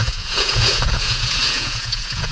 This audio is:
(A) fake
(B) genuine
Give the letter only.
A